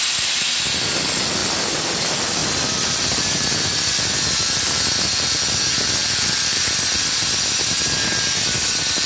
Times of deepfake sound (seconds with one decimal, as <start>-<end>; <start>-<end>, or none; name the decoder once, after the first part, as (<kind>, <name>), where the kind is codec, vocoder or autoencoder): 2.4-3.7 (vocoder, BigVGAN v2)